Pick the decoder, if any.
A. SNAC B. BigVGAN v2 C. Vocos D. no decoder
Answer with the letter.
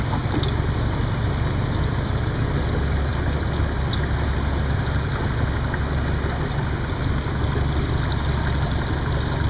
D